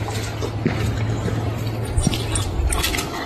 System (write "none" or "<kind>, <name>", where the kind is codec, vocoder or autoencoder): none